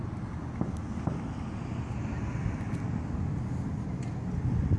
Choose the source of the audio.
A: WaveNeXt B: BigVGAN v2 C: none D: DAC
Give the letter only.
C